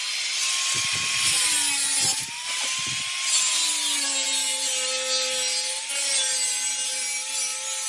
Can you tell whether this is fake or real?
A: real